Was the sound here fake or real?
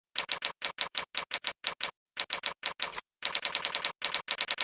real